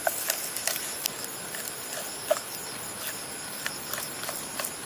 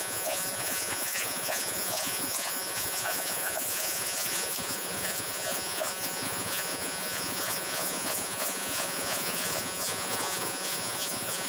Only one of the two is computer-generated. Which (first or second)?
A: second